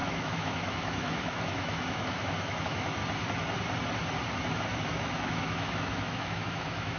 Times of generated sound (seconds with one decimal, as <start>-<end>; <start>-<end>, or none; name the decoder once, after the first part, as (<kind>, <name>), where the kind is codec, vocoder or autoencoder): 0.0-3.0 (autoencoder, DAC-VAE); 4.4-7.0